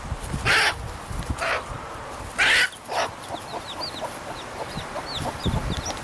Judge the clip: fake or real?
real